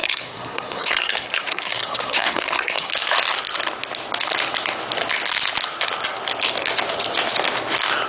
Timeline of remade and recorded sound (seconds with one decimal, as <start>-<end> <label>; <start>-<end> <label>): 0.0-2.9 remade; 2.9-8.1 recorded